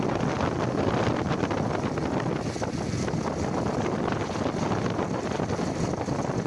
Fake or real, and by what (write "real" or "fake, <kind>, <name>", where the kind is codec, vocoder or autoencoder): real